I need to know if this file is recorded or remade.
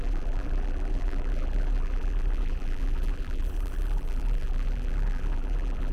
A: remade